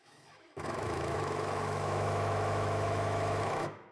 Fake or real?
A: fake